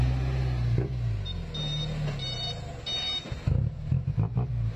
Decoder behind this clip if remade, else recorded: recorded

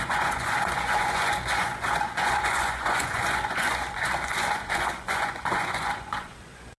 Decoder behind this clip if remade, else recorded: remade, vocoder, Vocos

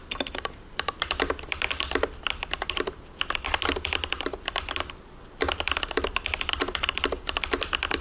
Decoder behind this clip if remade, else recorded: recorded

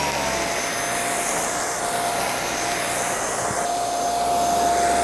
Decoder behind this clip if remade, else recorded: recorded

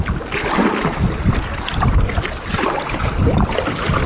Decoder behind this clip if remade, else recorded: recorded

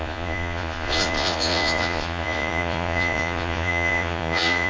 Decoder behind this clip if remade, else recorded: remade, vocoder, Vocos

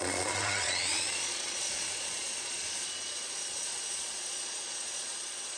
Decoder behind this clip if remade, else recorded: remade, vocoder, Vocos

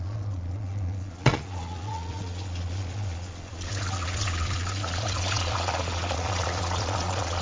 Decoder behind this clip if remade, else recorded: remade, vocoder, Vocos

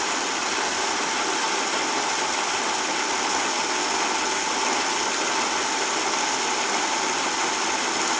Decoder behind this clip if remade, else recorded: recorded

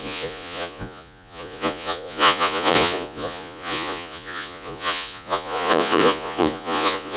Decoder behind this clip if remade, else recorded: remade, vocoder, Vocos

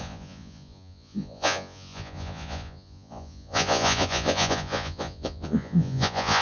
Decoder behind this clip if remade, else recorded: remade, vocoder, Vocos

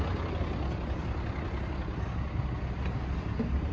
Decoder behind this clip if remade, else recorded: recorded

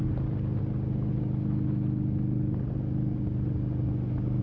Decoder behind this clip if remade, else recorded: recorded